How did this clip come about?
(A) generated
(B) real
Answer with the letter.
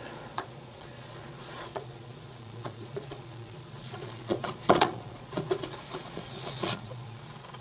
A